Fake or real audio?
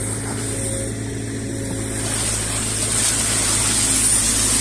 real